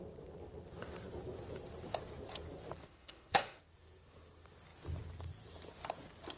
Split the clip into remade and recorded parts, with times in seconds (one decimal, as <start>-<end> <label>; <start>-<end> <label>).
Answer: 0.0-2.8 recorded; 2.8-3.6 remade; 3.6-6.4 recorded